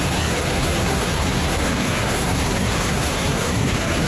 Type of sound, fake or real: fake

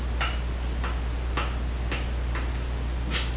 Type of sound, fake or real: real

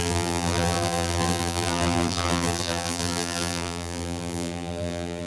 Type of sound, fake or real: fake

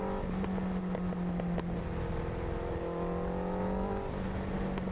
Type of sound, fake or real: real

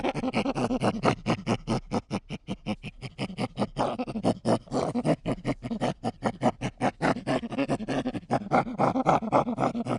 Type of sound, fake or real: real